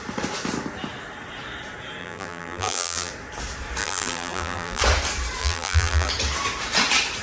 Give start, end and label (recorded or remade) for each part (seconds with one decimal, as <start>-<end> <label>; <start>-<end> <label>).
0.0-2.0 recorded; 2.0-3.1 remade; 3.1-3.8 recorded; 3.8-4.8 remade; 4.8-5.4 recorded; 5.4-6.1 remade; 6.1-7.2 recorded